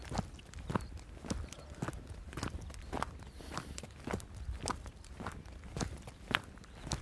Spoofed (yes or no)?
no